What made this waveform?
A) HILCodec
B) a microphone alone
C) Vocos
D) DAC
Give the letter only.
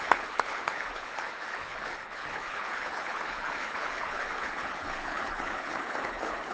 A